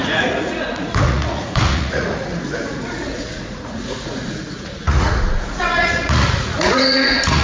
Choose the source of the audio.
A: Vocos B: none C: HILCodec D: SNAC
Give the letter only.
A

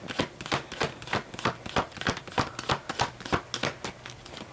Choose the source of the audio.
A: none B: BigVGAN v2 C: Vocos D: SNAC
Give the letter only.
A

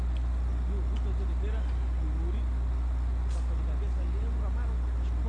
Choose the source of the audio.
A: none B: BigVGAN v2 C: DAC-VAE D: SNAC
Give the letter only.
A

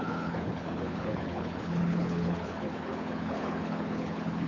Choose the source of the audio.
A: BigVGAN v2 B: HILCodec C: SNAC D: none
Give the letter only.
B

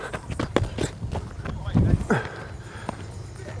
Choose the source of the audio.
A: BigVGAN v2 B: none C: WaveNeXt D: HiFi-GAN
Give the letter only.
B